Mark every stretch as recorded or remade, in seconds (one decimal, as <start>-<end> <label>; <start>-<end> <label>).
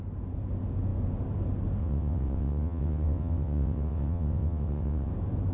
0.0-1.8 recorded; 1.8-5.1 remade; 5.1-5.5 recorded